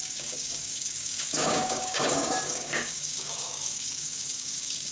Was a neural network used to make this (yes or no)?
yes